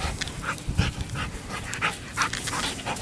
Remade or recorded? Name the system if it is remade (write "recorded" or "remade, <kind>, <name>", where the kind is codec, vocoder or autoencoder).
recorded